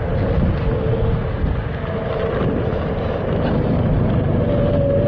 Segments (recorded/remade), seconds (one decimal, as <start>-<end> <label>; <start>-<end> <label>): 0.0-5.1 recorded